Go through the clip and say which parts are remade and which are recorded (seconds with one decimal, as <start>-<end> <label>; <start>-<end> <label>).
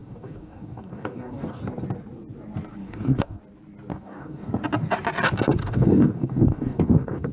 0.0-1.6 remade; 1.6-2.8 recorded; 2.8-3.4 remade; 3.4-3.9 recorded; 3.9-4.5 remade; 4.5-5.6 recorded; 5.6-7.3 remade